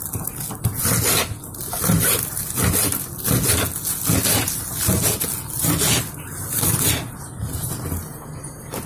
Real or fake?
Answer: real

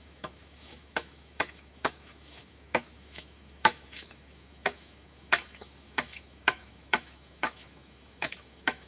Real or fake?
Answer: fake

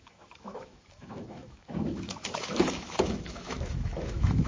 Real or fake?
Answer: fake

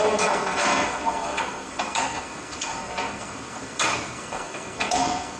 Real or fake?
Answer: fake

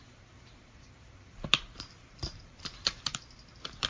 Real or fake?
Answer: fake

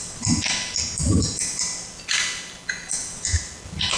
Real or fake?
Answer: real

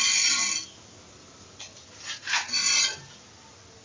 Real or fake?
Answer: real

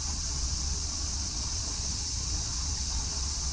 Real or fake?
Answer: fake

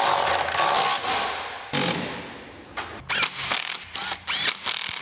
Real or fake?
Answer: real